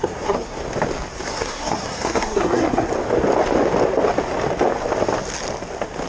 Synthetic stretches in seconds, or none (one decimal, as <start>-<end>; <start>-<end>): 0.0-0.6; 1.3-2.9